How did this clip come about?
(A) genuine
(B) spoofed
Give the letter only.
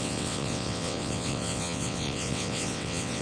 B